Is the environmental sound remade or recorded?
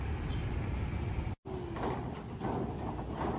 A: recorded